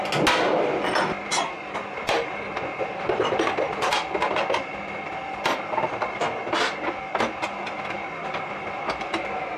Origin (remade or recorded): recorded